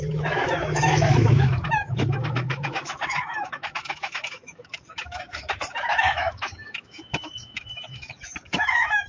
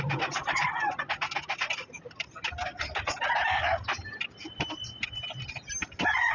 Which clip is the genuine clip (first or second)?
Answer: second